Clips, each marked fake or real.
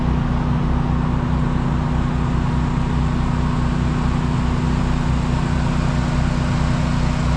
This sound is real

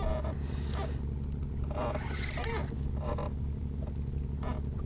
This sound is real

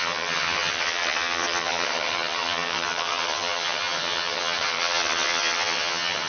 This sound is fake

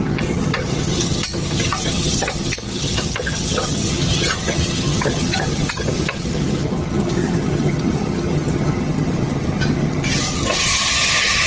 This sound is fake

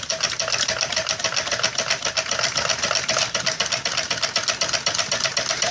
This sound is real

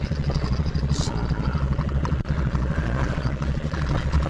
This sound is fake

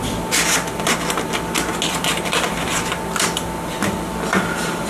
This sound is real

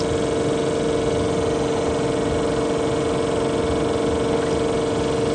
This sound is real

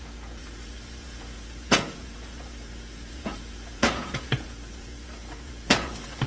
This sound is fake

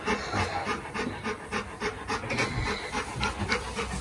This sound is real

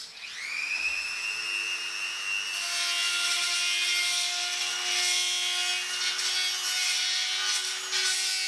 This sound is real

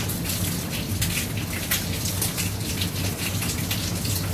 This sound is real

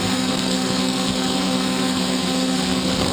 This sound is fake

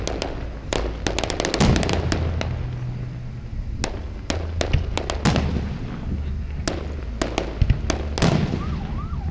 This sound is real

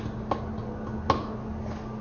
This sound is real